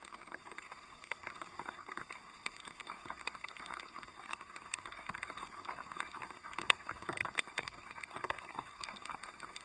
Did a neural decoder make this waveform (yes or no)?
yes